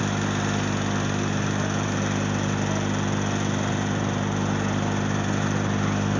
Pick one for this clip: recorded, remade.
recorded